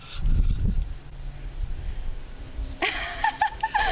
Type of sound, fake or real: fake